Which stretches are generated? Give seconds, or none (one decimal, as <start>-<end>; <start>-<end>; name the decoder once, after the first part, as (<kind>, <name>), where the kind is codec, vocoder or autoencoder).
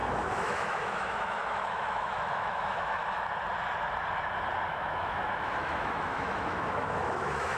0.0-3.0 (autoencoder, DAC-VAE); 4.7-7.6